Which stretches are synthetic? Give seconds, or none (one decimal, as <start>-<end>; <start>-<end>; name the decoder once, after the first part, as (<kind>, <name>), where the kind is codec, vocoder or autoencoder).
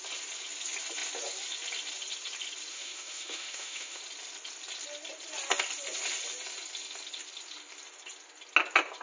2.7-4.0 (autoencoder, DAC-VAE)